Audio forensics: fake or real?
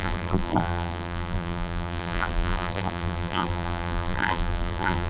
fake